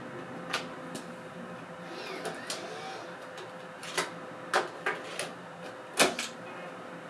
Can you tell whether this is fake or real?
real